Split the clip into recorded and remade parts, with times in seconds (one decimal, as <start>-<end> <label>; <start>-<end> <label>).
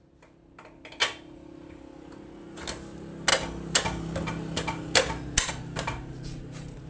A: 0.0-6.9 recorded